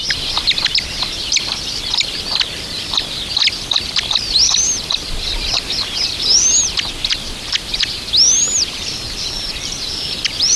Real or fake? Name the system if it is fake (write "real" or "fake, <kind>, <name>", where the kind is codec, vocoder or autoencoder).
fake, vocoder, BigVGAN v2